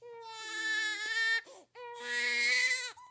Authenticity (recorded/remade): recorded